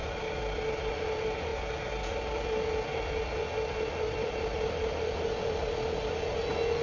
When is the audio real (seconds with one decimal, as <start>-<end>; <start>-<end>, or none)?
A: 0.0-6.8